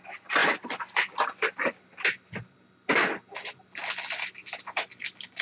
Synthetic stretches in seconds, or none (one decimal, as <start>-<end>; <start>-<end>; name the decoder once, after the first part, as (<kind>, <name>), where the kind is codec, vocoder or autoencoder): none